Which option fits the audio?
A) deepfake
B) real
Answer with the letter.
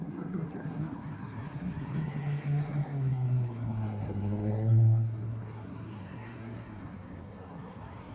A